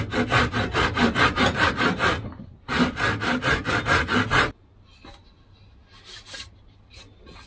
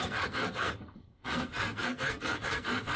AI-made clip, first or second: second